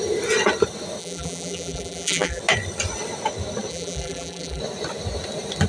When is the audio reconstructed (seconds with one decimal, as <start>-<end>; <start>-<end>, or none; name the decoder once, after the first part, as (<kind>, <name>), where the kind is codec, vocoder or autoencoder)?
1.0-2.4 (vocoder, BigVGAN v2); 3.7-4.6